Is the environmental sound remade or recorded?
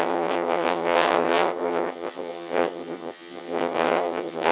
remade